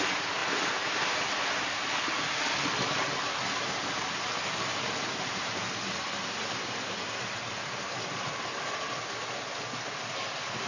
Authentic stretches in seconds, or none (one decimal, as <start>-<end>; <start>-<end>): 0.0-10.7